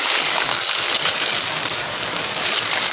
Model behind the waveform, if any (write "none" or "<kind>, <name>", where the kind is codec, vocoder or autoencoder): codec, DAC